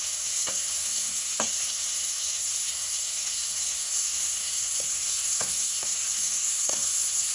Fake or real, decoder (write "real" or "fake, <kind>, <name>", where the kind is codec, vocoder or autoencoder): fake, codec, SNAC